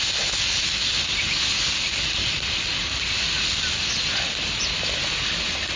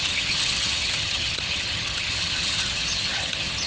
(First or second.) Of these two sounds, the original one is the first